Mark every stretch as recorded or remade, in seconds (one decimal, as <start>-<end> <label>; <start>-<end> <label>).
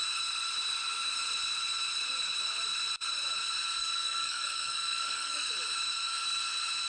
0.0-3.8 recorded; 3.8-5.5 remade; 5.5-6.9 recorded